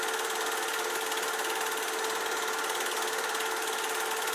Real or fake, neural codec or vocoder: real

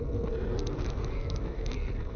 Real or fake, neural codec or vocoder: fake, codec, SNAC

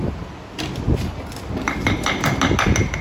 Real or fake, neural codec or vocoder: real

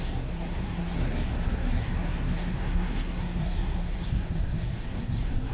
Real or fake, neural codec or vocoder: fake, codec, SNAC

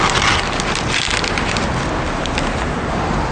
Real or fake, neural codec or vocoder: real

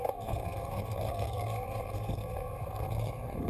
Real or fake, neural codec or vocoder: fake, codec, SNAC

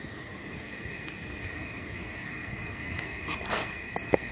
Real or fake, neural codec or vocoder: fake, codec, SNAC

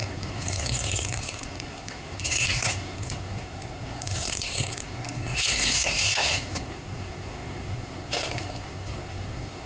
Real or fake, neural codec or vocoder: fake, codec, SNAC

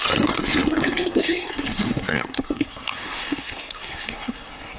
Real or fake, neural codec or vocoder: fake, codec, SNAC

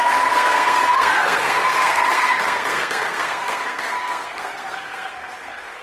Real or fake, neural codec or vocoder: fake, codec, SNAC